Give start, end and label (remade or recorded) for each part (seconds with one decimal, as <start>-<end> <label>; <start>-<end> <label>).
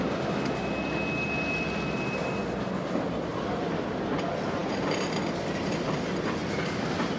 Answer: 0.0-7.2 recorded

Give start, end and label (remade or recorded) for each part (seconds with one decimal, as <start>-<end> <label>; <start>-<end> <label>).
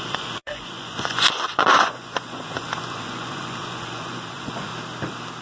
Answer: 0.0-4.7 remade; 4.7-5.4 recorded